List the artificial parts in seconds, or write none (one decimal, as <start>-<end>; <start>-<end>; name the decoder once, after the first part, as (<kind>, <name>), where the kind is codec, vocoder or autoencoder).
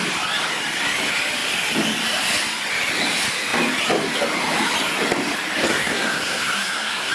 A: 5.7-7.1 (codec, SNAC)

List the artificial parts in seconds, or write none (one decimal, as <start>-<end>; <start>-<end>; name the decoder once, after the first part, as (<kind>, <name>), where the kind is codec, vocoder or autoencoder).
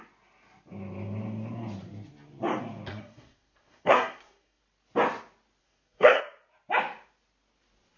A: 2.9-4.6 (codec, SNAC); 5.6-6.2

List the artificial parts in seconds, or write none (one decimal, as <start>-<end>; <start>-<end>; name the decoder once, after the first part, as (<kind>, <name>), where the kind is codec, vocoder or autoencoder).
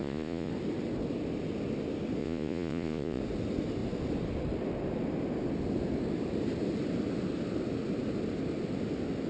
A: 0.0-0.5 (vocoder, Vocos); 2.2-3.2